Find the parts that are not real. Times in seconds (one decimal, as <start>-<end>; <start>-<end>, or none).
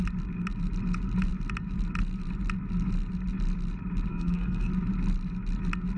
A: 4.1-4.7